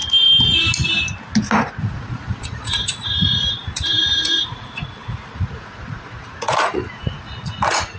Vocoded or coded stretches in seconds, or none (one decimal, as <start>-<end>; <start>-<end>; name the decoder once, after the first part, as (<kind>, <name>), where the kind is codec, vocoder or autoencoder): 1.8-8.0 (vocoder, Vocos)